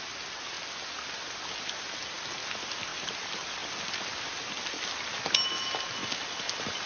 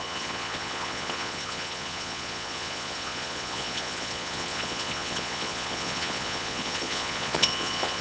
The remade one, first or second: second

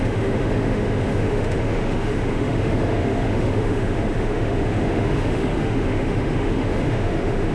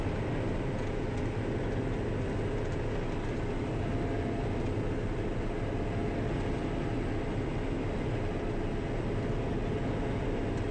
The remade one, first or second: first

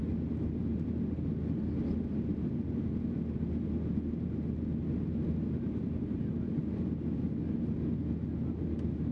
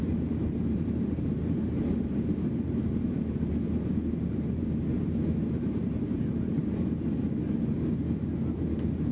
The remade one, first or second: second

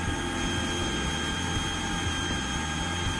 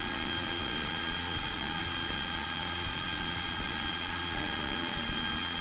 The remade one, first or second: second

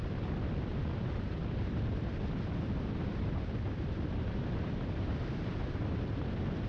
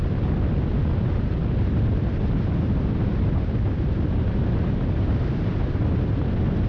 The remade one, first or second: first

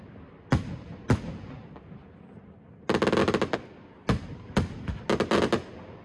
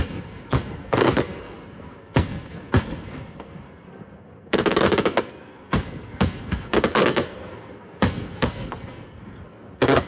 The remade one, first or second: second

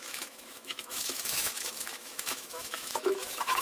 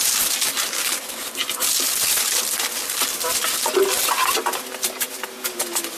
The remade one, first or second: first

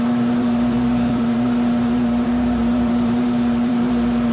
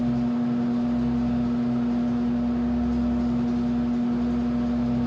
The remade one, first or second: first